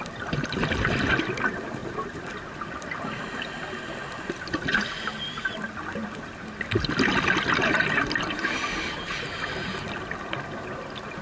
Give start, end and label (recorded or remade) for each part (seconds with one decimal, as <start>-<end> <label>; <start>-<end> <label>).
0.0-11.2 recorded